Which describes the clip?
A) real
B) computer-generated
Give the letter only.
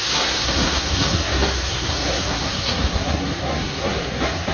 B